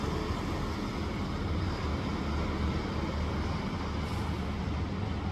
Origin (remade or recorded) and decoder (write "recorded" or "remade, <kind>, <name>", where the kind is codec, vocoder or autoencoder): recorded